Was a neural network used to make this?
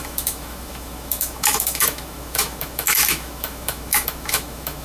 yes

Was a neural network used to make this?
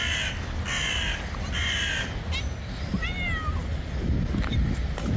no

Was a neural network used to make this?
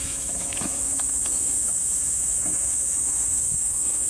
yes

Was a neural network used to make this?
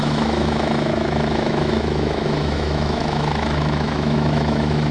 yes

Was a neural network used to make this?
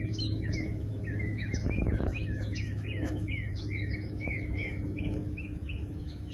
yes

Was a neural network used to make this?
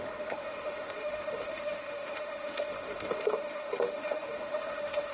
yes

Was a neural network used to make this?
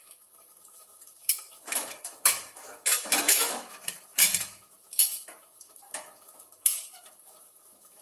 yes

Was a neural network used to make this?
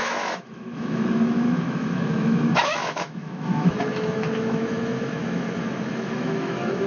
yes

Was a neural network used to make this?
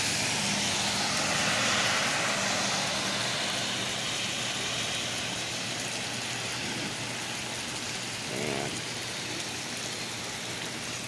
no